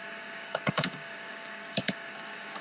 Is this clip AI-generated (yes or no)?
yes